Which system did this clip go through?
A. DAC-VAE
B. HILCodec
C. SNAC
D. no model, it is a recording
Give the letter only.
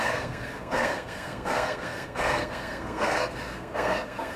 C